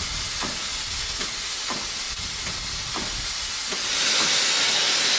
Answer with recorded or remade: recorded